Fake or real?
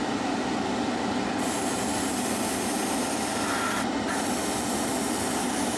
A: real